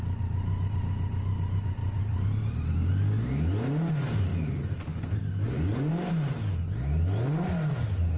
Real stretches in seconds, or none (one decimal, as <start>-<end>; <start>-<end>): 0.0-4.3; 6.1-8.2